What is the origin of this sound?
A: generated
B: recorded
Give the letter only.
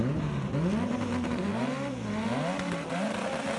B